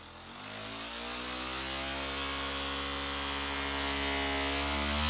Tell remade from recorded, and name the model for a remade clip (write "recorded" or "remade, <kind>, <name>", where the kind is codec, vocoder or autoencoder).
recorded